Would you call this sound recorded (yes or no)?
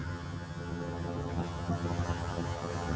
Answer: no